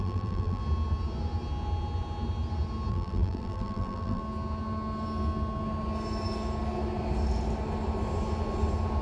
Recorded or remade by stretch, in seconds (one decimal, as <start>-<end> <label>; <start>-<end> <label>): 0.0-0.6 remade; 0.6-2.9 recorded; 2.9-4.2 remade; 4.2-9.0 recorded